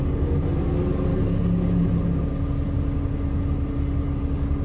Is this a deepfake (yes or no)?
no